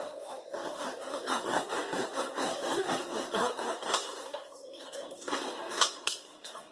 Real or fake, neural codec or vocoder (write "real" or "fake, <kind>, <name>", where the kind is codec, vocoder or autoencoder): fake, codec, SNAC